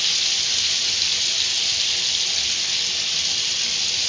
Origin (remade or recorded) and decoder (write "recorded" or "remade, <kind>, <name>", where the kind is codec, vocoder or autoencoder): recorded